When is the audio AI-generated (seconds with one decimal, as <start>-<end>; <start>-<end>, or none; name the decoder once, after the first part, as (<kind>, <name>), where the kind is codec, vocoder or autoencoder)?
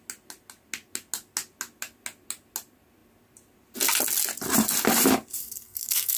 5.4-6.2 (codec, SNAC)